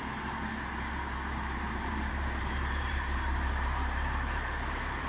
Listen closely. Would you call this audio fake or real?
fake